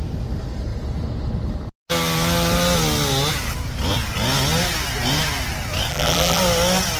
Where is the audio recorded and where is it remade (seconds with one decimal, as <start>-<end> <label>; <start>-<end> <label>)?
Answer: 0.0-5.9 recorded; 5.9-6.4 remade; 6.4-7.0 recorded